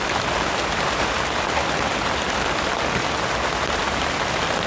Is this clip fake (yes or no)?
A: no